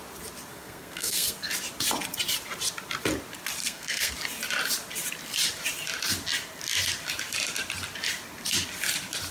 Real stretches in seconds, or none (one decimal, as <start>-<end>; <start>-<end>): 0.0-0.5; 1.5-3.6; 4.1-9.3